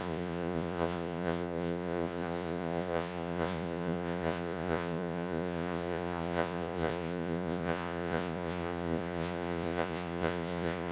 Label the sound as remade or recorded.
remade